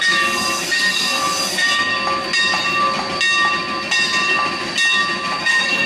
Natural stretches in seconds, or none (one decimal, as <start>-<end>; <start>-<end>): 1.9-5.4